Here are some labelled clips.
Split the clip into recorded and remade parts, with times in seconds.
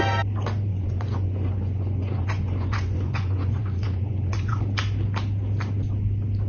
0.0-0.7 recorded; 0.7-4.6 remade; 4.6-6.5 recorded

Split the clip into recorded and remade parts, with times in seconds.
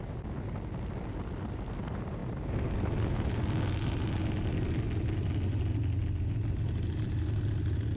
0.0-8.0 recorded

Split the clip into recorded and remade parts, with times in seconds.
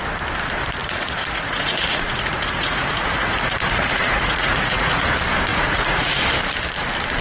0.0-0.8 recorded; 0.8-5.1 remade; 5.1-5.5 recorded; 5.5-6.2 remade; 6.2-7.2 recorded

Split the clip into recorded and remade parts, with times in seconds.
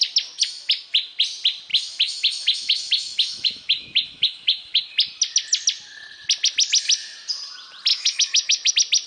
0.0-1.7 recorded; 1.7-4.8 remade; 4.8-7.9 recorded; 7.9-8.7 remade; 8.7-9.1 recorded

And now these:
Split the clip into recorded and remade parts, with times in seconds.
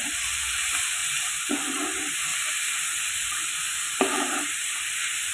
0.0-1.0 remade; 1.0-1.9 recorded; 1.9-2.3 remade; 2.3-4.2 recorded; 4.2-5.3 remade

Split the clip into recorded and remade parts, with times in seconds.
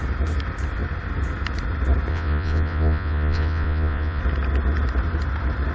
0.0-2.1 recorded; 2.1-4.2 remade; 4.2-5.7 recorded